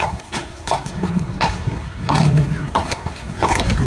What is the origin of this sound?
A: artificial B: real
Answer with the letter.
A